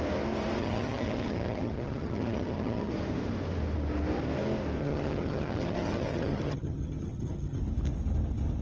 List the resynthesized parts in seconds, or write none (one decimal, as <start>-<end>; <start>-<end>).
0.6-2.9; 4.8-7.6